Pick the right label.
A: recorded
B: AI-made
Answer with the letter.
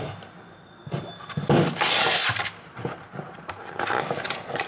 A